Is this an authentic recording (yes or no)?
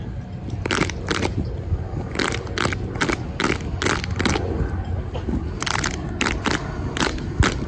yes